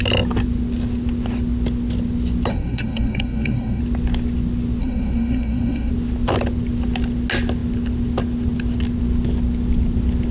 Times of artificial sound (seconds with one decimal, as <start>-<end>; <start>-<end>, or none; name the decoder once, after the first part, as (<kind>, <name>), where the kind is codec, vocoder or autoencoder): 2.5-3.8 (codec, SNAC); 4.8-5.9